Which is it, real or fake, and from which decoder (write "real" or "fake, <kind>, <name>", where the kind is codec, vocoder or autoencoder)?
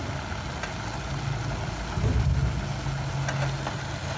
real